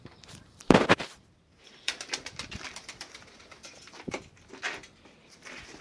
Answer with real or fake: fake